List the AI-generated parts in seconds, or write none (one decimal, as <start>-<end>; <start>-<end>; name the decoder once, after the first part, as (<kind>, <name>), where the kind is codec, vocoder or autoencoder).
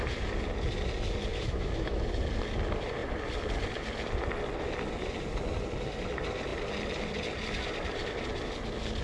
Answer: 1.3-2.0 (autoencoder, DAC-VAE)